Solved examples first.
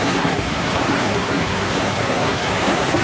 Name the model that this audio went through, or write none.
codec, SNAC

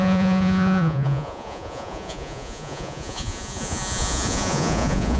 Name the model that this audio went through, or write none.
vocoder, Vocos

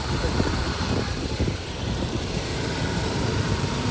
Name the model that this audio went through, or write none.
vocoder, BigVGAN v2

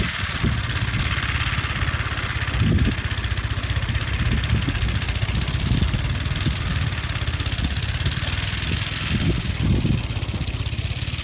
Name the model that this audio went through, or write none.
none